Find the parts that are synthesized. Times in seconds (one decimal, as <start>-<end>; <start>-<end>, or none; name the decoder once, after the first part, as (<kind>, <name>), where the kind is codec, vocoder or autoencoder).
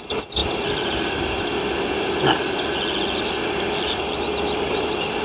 none